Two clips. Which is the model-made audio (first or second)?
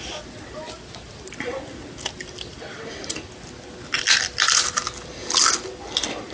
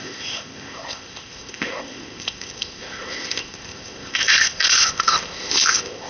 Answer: second